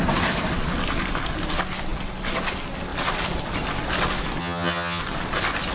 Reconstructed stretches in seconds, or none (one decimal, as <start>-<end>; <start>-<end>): 4.4-5.0